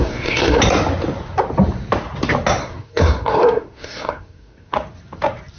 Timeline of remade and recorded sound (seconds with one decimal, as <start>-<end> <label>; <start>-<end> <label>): 0.0-0.6 remade; 0.6-2.6 recorded; 2.6-4.7 remade; 4.7-5.6 recorded